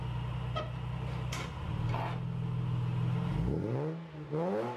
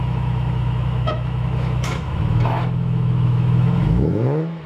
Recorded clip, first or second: first